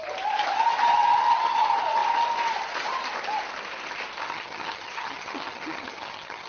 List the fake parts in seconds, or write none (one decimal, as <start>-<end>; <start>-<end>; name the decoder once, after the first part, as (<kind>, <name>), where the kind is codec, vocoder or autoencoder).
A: 4.2-6.5 (vocoder, HiFi-GAN)